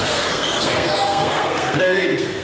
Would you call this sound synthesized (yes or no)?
yes